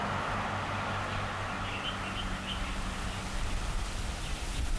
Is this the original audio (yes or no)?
yes